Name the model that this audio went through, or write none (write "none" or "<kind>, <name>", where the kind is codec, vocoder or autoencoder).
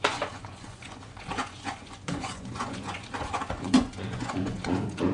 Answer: vocoder, Vocos